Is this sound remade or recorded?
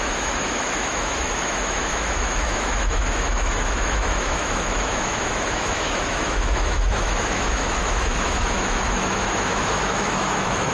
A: remade